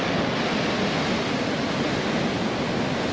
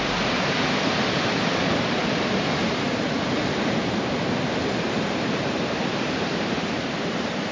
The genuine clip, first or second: first